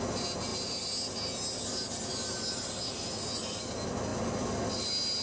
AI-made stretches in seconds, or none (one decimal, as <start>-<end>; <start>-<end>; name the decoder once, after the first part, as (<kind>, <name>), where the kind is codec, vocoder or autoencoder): none